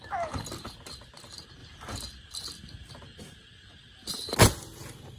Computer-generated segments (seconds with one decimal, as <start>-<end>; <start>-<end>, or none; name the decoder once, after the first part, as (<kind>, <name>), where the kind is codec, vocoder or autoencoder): none